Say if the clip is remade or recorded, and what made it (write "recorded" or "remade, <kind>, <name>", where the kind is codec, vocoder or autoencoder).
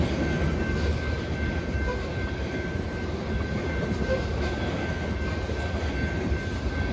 recorded